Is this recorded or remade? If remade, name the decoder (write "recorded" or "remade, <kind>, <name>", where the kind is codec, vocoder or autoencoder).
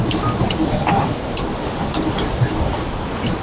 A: recorded